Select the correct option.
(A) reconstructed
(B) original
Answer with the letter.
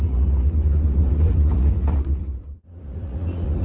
A